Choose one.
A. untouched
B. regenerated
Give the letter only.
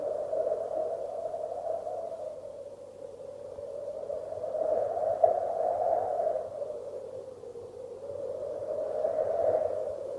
A